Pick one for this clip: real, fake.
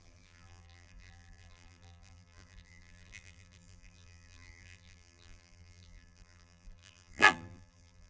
fake